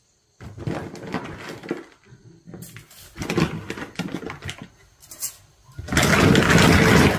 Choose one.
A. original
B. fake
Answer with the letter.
A